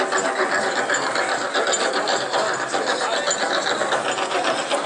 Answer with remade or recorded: recorded